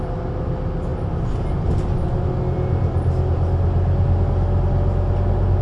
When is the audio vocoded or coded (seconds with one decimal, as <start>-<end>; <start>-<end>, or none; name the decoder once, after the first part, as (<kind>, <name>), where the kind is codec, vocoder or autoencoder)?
none